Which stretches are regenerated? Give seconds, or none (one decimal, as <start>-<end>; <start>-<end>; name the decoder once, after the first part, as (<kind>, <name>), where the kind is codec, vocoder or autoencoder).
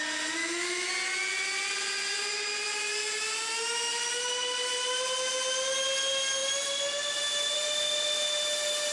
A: 0.4-0.9 (autoencoder, DAC-VAE)